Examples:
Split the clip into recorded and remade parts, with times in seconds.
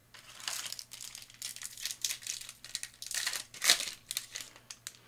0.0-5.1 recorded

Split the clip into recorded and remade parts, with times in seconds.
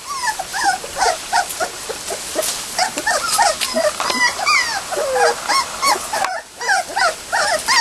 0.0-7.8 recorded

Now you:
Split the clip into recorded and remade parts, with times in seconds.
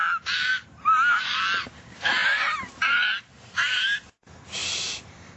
0.0-5.4 recorded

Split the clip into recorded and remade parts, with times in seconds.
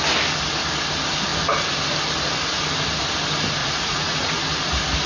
0.0-3.6 recorded; 3.6-4.4 remade; 4.4-5.1 recorded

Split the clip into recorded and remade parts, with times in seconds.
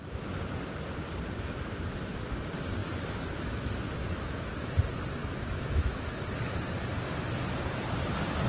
0.0-2.8 recorded; 2.8-4.6 remade; 4.6-5.2 recorded; 5.2-6.2 remade; 6.2-8.5 recorded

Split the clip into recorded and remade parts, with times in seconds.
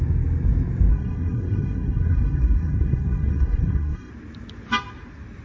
0.0-0.9 recorded; 0.9-4.1 remade; 4.1-5.4 recorded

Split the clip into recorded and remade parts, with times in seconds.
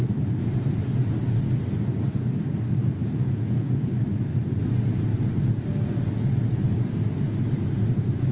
0.0-3.0 recorded; 3.0-3.9 remade; 3.9-8.3 recorded